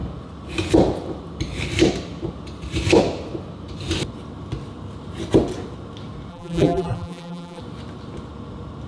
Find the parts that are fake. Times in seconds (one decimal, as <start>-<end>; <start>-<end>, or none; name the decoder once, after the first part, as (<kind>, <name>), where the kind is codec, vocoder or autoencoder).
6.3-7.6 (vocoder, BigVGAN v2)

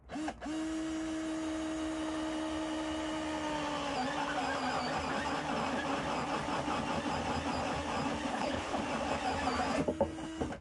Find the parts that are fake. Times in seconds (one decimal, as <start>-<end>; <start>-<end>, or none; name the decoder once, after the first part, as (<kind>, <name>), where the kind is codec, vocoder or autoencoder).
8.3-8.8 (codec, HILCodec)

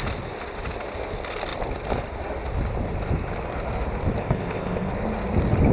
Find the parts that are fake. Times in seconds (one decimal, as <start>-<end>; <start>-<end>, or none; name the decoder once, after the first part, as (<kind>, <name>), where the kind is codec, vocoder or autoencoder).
4.2-4.9 (codec, ZipCodec)

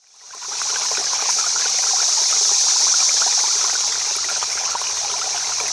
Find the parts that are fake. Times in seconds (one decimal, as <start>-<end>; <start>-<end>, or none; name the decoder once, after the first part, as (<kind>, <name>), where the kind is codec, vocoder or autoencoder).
1.0-1.6 (codec, HILCodec); 4.3-4.8

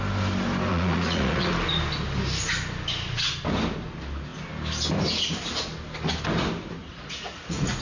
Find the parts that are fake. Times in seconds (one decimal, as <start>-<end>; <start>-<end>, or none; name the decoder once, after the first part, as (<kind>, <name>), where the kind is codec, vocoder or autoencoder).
0.7-1.5 (vocoder, Vocos); 6.8-7.8

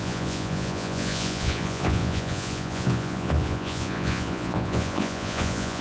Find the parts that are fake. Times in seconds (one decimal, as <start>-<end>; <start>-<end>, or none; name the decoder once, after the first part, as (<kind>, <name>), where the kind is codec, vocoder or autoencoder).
0.0-5.8 (vocoder, Vocos)